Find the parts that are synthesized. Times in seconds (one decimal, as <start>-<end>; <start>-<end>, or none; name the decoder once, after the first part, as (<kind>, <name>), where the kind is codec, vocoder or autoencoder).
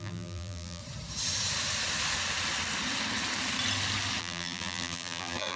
0.0-0.8 (vocoder, BigVGAN v2); 4.2-5.6